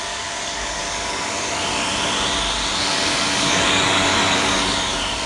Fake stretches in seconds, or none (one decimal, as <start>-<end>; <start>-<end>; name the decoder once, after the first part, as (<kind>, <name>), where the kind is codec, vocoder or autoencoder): 0.0-1.9 (codec, DAC); 2.7-5.3